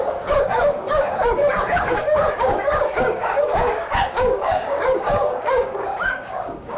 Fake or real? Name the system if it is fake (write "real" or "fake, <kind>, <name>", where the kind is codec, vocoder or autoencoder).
fake, codec, DAC